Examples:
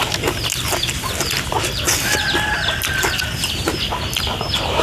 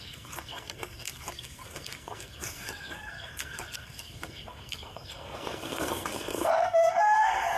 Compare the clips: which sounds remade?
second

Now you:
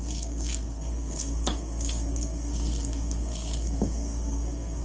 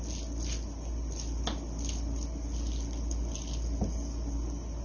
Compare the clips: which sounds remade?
first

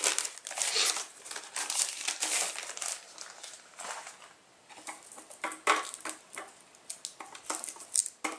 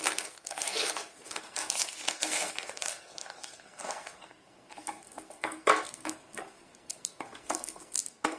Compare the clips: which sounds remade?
second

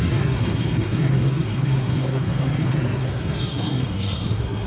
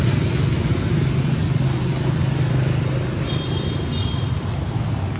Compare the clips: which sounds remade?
first